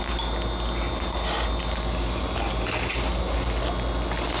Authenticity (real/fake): real